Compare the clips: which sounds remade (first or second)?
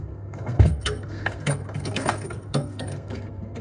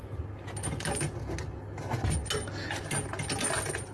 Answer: first